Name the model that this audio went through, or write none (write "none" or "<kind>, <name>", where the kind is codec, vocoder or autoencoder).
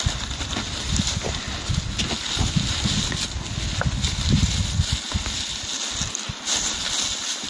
none